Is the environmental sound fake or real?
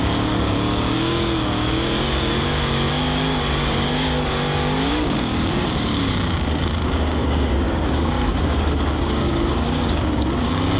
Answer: fake